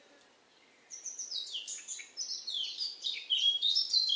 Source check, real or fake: fake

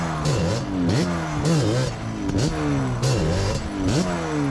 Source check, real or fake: real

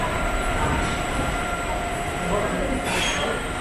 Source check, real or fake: fake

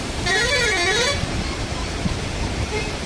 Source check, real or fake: fake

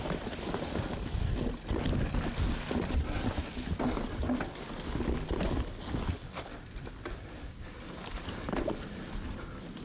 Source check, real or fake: real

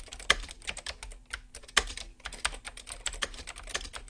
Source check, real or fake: real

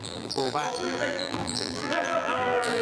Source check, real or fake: fake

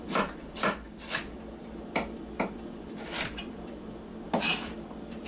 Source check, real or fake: fake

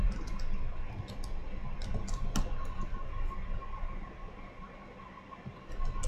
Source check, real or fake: real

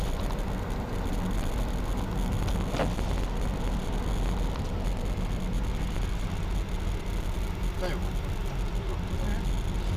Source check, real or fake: real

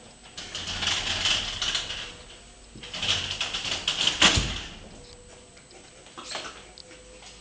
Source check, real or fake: real